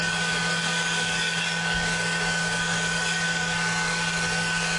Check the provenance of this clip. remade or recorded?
remade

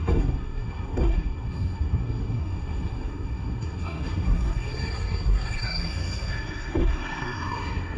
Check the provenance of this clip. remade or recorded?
remade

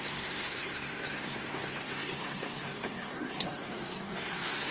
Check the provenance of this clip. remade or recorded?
remade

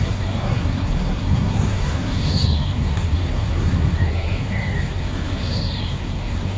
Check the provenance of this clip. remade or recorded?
remade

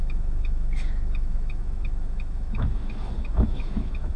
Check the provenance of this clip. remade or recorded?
remade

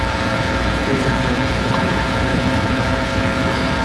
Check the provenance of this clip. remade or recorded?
remade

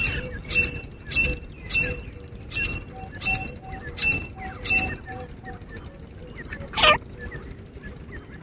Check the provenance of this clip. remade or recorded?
recorded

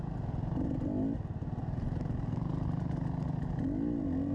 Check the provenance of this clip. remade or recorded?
recorded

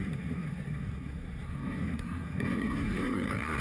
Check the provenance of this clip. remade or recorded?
remade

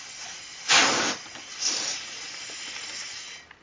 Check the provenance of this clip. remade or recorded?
recorded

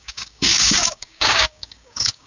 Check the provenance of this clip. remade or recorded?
remade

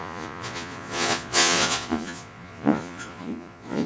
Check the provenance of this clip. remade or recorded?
remade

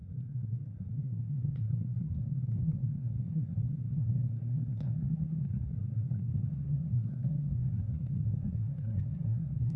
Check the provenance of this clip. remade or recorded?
remade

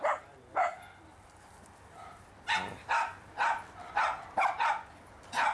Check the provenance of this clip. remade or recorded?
recorded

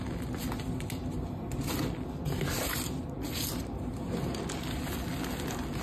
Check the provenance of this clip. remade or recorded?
recorded